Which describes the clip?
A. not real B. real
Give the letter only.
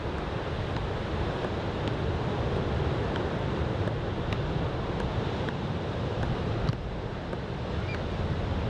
B